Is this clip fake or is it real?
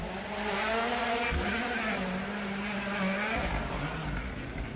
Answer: real